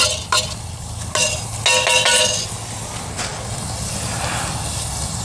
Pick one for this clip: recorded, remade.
recorded